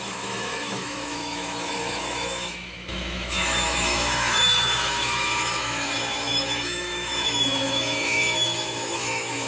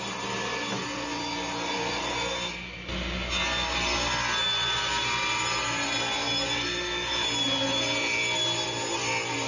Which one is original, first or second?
second